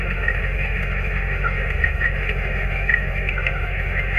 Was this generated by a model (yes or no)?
yes